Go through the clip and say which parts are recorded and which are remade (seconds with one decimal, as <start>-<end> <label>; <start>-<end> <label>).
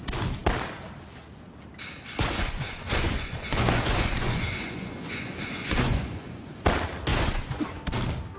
0.0-2.1 recorded; 2.1-6.6 remade; 6.6-7.1 recorded; 7.1-7.8 remade; 7.8-8.4 recorded